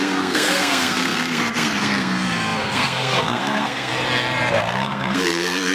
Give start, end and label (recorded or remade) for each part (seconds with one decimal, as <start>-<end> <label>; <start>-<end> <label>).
0.0-3.9 remade; 3.9-4.6 recorded; 4.6-5.7 remade